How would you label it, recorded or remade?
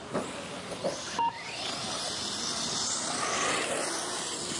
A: recorded